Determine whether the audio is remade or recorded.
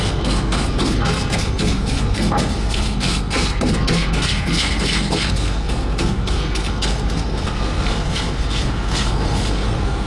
remade